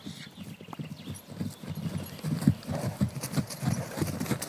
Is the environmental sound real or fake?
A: real